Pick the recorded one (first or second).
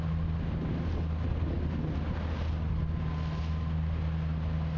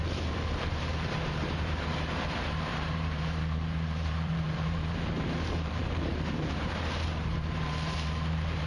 first